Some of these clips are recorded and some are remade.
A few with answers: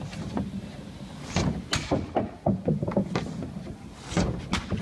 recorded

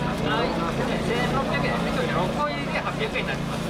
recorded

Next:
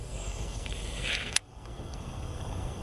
remade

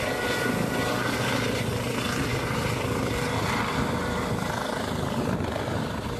recorded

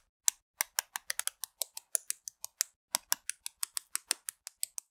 recorded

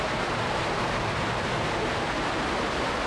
recorded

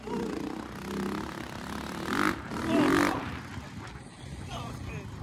recorded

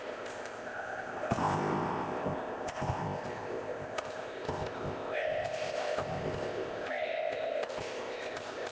remade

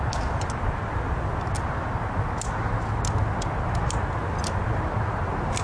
recorded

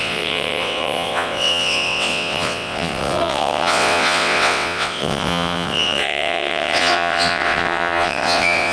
remade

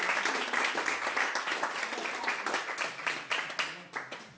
recorded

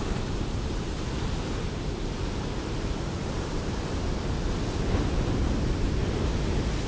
recorded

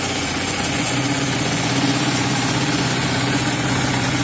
remade